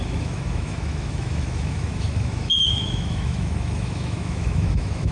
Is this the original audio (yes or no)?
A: no